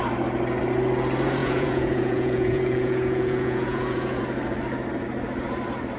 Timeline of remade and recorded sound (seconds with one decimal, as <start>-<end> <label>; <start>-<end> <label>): 0.0-1.4 recorded; 1.4-4.2 remade; 4.2-6.0 recorded